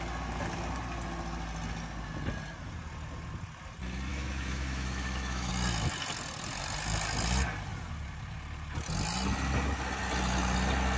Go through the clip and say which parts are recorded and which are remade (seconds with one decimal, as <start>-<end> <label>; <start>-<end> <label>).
0.0-4.1 recorded; 4.1-5.5 remade; 5.5-11.0 recorded